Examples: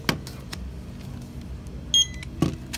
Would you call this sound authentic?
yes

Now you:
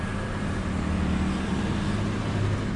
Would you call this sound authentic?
yes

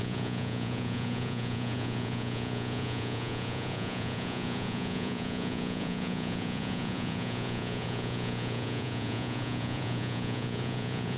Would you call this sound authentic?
no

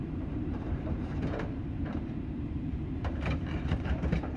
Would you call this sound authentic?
no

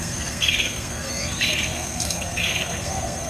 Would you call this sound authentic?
no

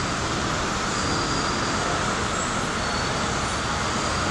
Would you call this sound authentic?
yes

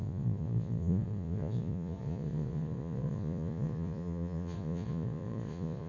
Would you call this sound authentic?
no